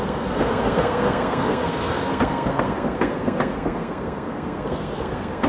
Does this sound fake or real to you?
fake